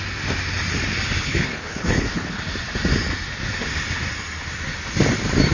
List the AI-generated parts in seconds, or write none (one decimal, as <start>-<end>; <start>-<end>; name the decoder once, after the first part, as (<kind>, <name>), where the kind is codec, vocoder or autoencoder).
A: 1.2-2.4 (codec, HILCodec)